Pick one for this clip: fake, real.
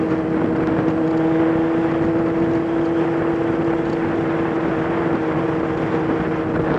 real